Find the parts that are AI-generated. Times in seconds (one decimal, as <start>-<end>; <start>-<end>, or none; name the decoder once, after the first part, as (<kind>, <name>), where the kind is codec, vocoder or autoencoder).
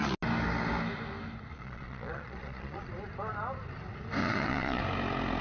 1.5-2.9 (vocoder, Vocos); 4.2-4.8